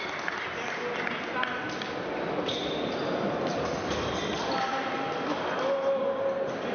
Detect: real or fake real